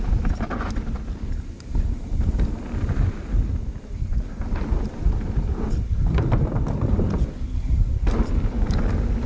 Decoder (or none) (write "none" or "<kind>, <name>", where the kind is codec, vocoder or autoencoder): none